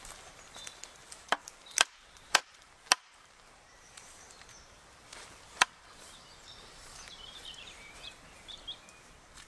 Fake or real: fake